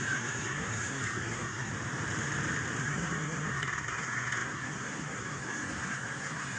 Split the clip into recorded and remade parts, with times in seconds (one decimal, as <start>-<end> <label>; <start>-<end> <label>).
0.0-1.7 remade; 1.7-2.8 recorded; 2.8-6.6 remade